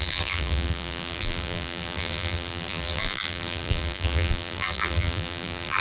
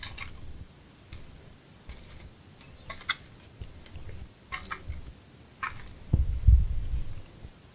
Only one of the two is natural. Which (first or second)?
second